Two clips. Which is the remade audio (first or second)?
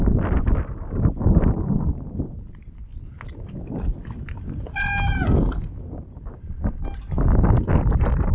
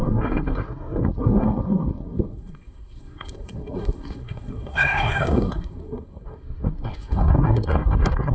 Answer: second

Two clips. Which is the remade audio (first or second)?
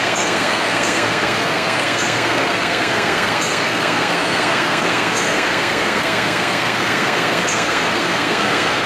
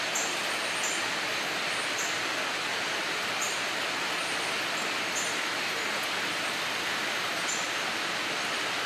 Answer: first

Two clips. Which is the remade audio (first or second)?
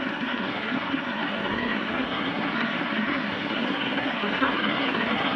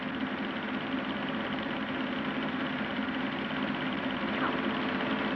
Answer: first